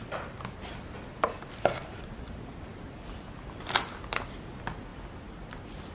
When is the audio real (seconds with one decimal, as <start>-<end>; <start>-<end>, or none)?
0.0-5.9